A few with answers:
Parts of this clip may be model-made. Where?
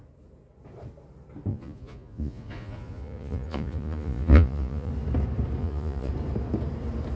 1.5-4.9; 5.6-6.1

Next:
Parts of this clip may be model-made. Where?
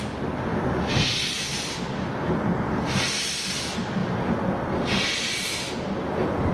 1.5-2.3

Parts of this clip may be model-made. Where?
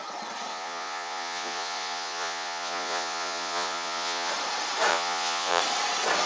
0.5-4.3; 4.9-5.6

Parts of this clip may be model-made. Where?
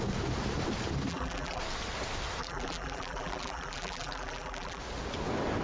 1.1-1.6; 2.4-4.8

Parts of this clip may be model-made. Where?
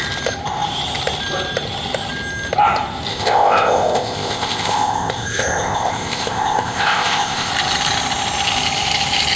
3.1-7.5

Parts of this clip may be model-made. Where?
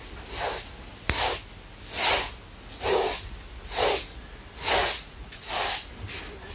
4.8-5.5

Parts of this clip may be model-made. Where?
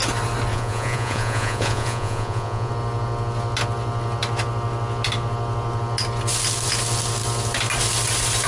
0.5-2.7